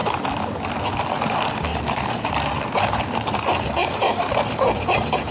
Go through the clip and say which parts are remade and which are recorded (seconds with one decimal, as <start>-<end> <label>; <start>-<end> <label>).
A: 0.0-0.7 remade; 0.7-1.7 recorded; 1.7-5.3 remade